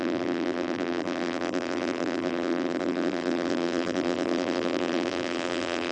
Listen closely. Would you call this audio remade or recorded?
remade